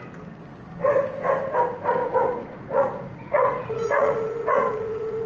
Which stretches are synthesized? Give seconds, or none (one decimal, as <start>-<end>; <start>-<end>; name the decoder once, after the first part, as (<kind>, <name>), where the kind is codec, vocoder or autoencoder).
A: 2.0-5.3 (vocoder, Vocos)